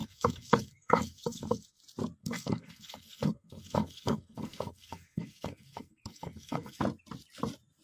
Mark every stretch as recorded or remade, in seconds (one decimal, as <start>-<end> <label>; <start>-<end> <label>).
0.0-1.8 remade; 1.8-2.2 recorded; 2.2-6.8 remade; 6.8-7.8 recorded